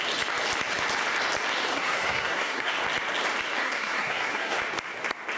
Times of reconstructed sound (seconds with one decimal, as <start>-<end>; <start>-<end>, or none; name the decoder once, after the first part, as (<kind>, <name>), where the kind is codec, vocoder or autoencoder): 1.7-2.7 (codec, SNAC); 3.6-4.6